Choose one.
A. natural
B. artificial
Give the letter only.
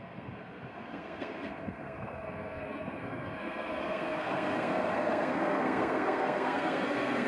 B